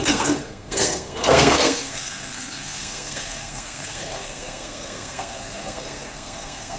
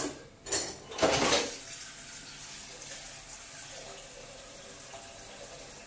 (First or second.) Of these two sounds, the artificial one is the first